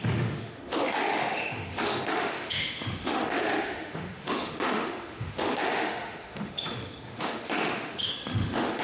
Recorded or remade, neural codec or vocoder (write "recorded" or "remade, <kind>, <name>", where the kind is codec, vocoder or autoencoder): remade, autoencoder, DAC-VAE